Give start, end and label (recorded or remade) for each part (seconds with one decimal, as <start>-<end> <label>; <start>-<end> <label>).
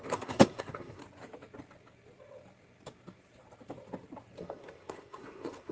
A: 0.0-1.0 remade; 1.0-4.4 recorded; 4.4-5.7 remade